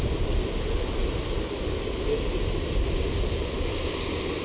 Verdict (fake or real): real